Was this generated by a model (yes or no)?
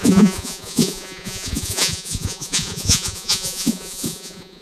yes